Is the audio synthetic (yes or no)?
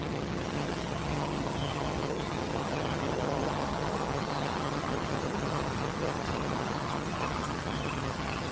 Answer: yes